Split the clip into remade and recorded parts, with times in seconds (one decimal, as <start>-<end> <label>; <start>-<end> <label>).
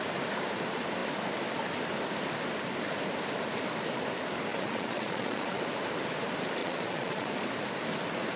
0.0-4.5 recorded; 4.5-5.6 remade; 5.6-6.6 recorded; 6.6-7.3 remade; 7.3-8.4 recorded